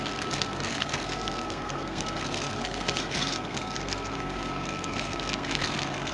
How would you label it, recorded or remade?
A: remade